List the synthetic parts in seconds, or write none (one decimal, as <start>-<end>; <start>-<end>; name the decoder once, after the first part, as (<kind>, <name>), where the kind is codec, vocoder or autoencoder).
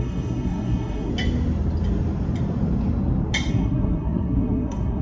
0.0-1.1 (codec, SNAC); 3.5-5.0